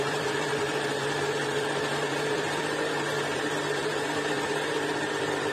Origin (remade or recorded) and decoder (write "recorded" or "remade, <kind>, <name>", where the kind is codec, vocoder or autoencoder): remade, vocoder, BigVGAN v2